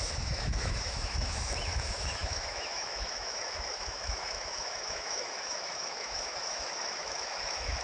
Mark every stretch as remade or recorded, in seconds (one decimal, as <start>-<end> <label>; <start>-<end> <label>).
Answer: 0.0-7.8 remade